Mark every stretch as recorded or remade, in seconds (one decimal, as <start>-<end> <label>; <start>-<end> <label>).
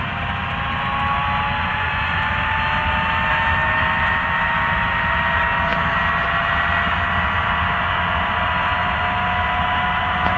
0.0-1.6 recorded; 1.6-2.3 remade; 2.3-10.4 recorded